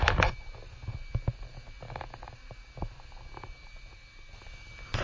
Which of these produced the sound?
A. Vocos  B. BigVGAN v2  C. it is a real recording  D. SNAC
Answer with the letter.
C